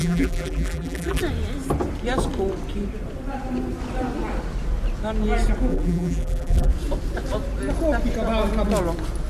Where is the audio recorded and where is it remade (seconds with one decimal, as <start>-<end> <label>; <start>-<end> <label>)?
0.0-1.2 remade; 1.2-5.7 recorded; 5.7-6.7 remade; 6.7-9.3 recorded